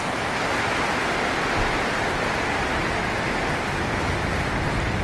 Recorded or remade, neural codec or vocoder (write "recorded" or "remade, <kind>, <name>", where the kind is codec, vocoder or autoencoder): recorded